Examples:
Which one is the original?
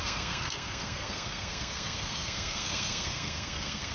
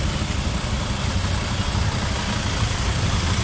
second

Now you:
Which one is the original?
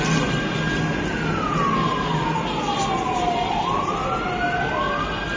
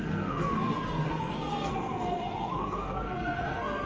first